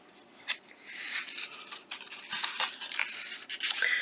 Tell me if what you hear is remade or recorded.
remade